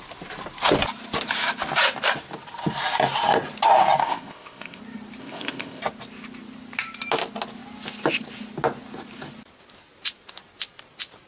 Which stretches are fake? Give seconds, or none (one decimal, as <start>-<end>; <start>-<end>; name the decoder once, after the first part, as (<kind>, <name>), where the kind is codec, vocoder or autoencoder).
4.0-4.8 (codec, ZipCodec); 5.2-5.8